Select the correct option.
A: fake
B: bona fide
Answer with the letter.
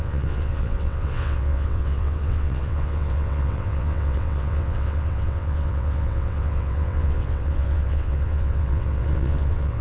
A